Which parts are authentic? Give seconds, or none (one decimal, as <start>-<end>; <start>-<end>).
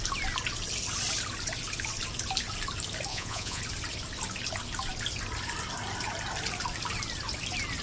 0.0-3.1; 3.6-7.8